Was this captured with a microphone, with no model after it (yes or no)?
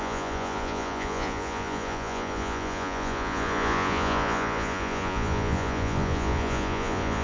no